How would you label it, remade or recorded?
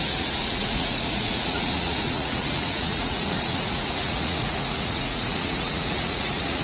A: remade